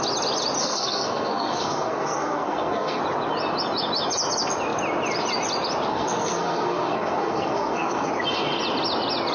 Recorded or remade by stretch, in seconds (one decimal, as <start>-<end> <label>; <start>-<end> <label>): 0.0-0.6 recorded; 0.6-3.0 remade; 3.0-5.9 recorded; 5.9-8.1 remade; 8.1-9.3 recorded